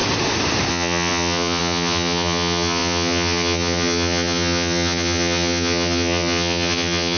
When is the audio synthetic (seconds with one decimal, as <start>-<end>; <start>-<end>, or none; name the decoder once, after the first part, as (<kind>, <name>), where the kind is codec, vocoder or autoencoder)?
0.7-7.2 (vocoder, HiFi-GAN)